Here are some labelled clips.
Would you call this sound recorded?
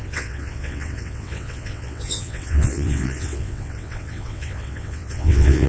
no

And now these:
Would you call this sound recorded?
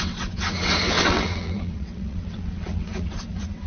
no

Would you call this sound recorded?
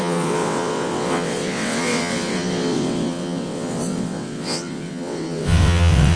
no